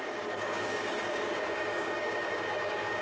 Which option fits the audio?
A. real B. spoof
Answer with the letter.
B